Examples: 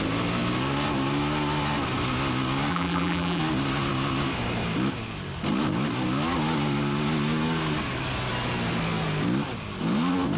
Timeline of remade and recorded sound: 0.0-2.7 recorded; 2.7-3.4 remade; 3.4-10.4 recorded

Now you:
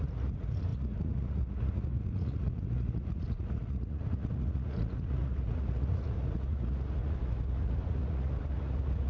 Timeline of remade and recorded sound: 0.0-9.1 remade

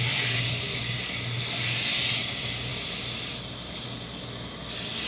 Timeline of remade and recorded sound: 0.0-5.1 recorded

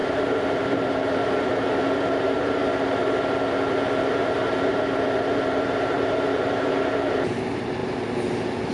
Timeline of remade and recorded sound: 0.0-2.6 remade; 2.6-4.1 recorded; 4.1-7.8 remade; 7.8-8.7 recorded

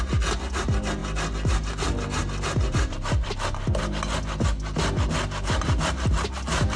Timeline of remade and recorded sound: 0.0-6.8 recorded

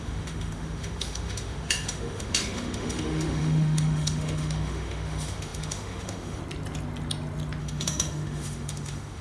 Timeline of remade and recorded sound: 0.0-6.4 remade; 6.4-7.6 recorded; 7.6-9.2 remade